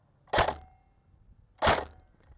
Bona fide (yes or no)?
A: yes